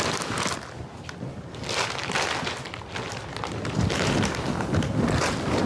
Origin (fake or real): real